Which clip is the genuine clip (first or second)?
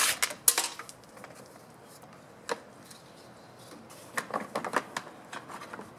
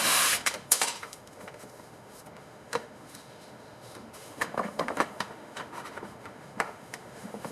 first